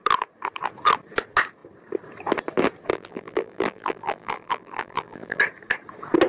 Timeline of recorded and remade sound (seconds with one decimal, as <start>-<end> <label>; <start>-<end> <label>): 0.0-2.9 recorded; 2.9-5.4 remade; 5.4-6.3 recorded